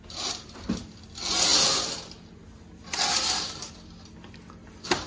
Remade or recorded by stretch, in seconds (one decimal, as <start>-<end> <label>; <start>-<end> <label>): 0.0-5.1 recorded